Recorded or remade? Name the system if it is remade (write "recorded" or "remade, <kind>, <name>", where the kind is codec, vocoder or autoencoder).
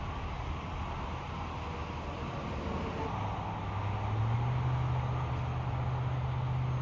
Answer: recorded